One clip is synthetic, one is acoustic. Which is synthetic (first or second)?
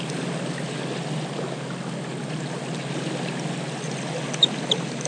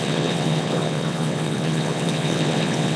second